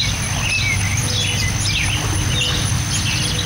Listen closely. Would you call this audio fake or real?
real